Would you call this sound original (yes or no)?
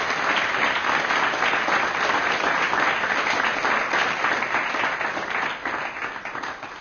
no